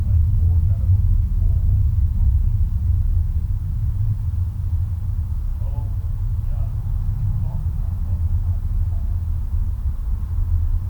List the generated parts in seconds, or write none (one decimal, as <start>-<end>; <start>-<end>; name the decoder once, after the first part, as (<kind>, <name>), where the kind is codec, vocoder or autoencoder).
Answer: 3.8-4.4 (vocoder, BigVGAN v2); 9.6-10.2